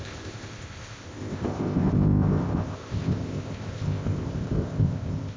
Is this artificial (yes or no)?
yes